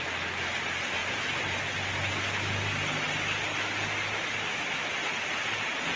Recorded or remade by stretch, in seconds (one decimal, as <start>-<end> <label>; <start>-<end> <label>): 0.0-6.0 recorded